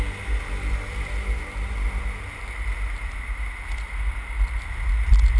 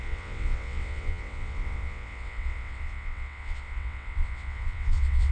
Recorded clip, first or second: first